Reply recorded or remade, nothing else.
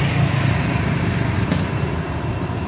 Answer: recorded